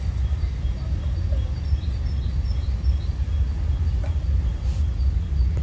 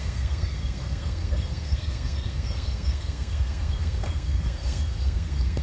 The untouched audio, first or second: first